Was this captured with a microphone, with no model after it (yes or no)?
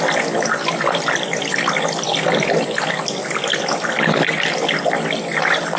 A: yes